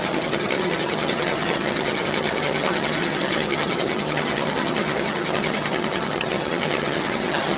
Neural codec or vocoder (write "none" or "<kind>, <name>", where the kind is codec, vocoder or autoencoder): vocoder, HiFi-GAN